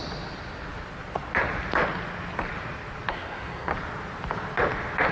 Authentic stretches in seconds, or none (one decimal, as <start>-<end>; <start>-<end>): 0.0-3.1; 3.7-5.1